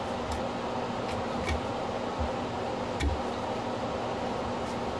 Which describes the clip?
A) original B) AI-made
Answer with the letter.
A